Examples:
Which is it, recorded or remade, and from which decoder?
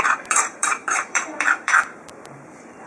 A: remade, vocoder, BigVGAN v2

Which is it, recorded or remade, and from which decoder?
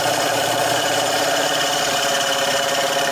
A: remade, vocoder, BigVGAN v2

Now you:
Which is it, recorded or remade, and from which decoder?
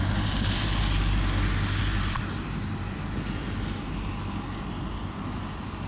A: recorded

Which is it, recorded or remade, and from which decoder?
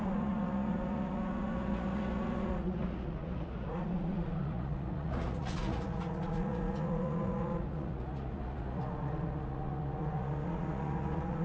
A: remade, vocoder, Vocos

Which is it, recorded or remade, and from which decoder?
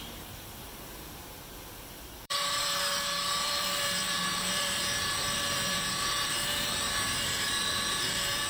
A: remade, vocoder, BigVGAN v2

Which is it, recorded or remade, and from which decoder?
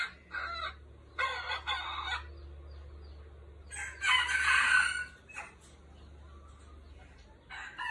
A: recorded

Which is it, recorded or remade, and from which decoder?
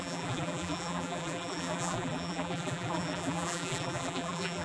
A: remade, vocoder, BigVGAN v2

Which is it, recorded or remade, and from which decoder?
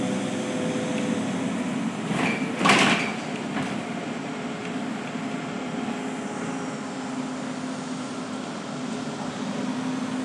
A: recorded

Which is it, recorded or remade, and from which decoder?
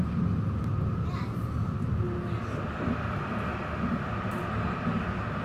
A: recorded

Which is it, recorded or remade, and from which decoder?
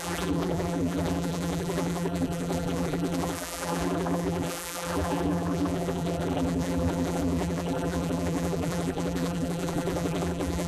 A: remade, vocoder, BigVGAN v2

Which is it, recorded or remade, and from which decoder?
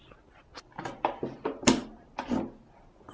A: recorded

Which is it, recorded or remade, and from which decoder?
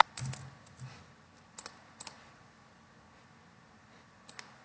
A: recorded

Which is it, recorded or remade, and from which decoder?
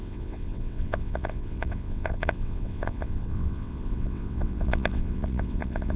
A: remade, vocoder, WaveNeXt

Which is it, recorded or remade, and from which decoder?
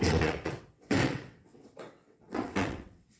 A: remade, vocoder, WaveNeXt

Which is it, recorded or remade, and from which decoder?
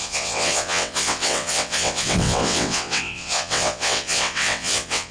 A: remade, vocoder, WaveNeXt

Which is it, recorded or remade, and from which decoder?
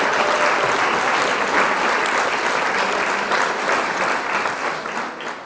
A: recorded